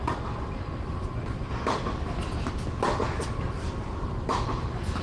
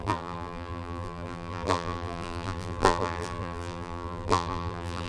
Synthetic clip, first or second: second